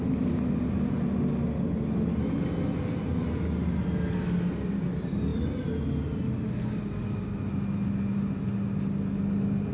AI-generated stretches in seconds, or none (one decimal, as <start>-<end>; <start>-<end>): none